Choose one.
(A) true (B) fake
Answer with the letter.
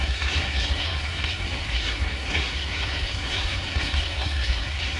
B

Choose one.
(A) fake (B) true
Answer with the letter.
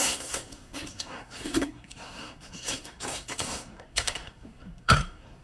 A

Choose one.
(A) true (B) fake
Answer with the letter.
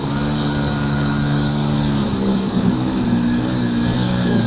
B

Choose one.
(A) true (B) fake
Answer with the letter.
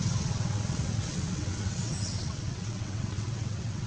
B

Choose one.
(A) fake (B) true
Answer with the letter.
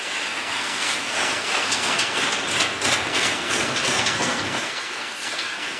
A